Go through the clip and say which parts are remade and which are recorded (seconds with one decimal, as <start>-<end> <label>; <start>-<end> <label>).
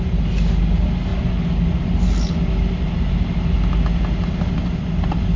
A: 0.0-5.4 recorded